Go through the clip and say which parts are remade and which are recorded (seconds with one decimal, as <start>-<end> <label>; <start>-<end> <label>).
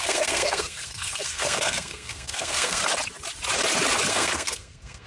0.0-2.8 remade; 2.8-4.1 recorded; 4.1-5.1 remade